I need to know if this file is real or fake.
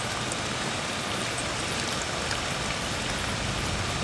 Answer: real